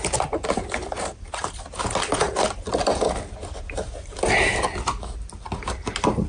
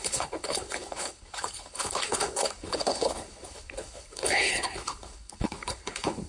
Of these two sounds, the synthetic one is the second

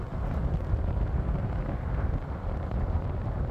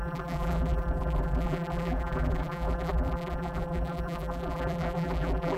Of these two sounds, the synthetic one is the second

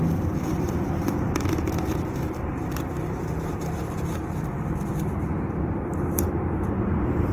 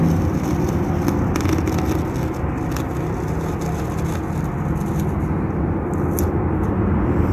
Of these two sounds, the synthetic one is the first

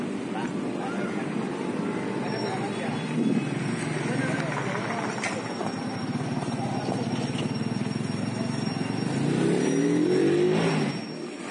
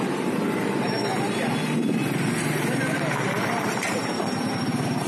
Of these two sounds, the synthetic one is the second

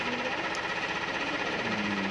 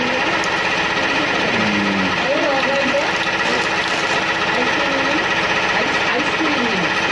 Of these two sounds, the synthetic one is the first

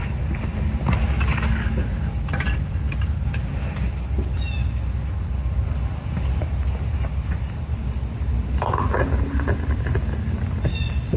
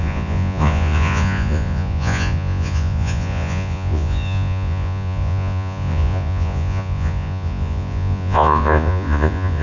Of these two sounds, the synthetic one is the second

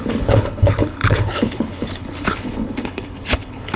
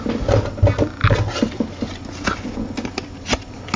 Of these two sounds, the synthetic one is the first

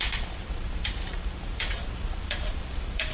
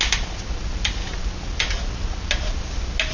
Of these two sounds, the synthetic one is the first